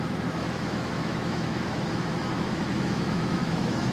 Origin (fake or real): fake